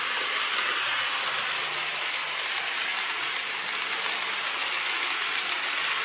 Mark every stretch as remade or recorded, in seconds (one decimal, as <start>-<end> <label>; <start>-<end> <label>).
0.0-6.0 recorded